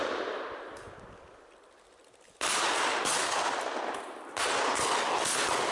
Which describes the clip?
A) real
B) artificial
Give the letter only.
A